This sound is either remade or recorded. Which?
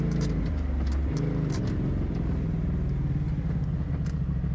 recorded